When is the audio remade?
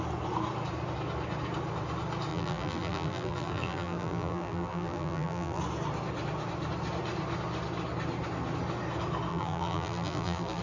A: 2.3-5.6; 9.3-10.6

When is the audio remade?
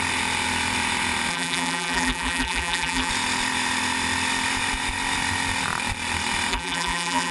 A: 1.3-3.1; 6.5-7.3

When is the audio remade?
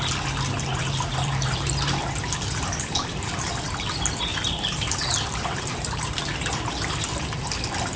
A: 0.7-3.5; 4.3-7.4